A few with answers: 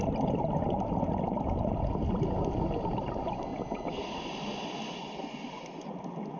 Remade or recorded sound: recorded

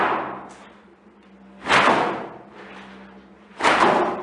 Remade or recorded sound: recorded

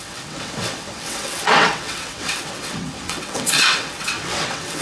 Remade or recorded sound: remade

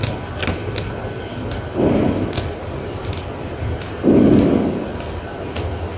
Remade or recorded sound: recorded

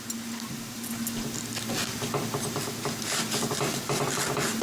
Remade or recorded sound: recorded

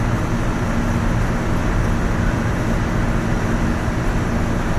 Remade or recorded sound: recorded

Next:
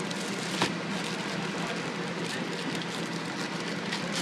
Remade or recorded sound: recorded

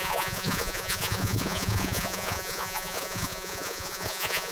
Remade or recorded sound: remade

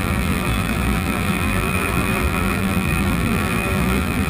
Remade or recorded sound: remade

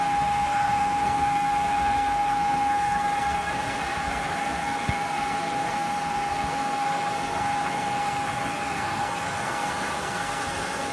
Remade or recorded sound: remade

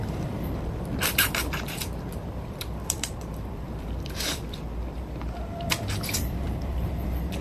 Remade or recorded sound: remade